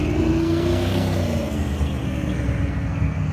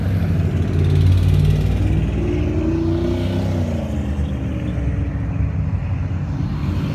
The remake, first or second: first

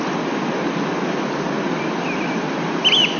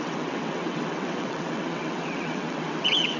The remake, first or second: second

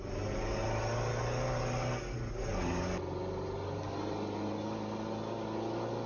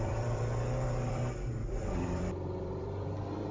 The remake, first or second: second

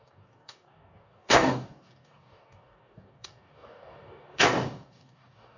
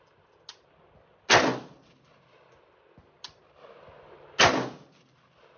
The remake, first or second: first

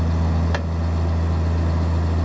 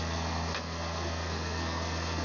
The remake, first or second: second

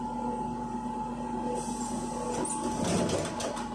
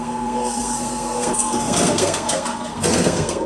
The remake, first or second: second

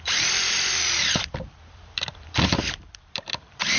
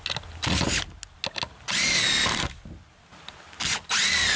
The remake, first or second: first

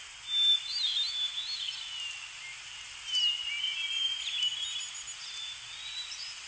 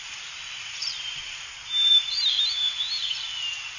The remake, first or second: second